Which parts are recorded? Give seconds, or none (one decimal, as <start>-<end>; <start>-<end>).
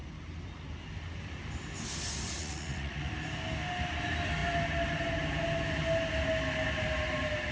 0.0-2.4; 3.1-7.5